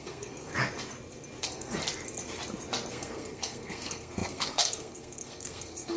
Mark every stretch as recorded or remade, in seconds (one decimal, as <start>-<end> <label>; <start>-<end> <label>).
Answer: 0.0-0.5 remade; 0.5-1.4 recorded; 1.4-1.8 remade; 1.8-2.9 recorded; 2.9-6.0 remade